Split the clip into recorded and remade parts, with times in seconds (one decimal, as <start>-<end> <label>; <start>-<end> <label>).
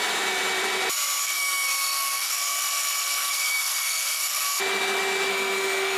0.0-1.2 recorded; 1.2-4.6 remade; 4.6-5.3 recorded; 5.3-6.0 remade